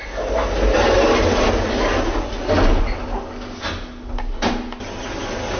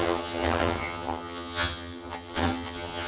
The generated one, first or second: second